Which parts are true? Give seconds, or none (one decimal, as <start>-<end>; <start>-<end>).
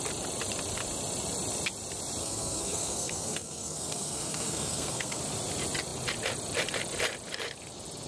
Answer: 0.0-2.2; 5.2-8.1